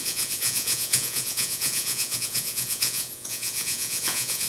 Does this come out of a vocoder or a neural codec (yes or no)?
yes